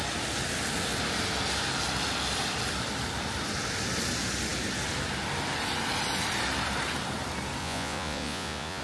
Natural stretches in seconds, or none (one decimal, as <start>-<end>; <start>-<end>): 0.0-7.6